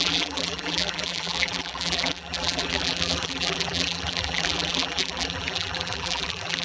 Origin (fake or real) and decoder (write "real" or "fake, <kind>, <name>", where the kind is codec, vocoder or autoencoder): fake, vocoder, BigVGAN v2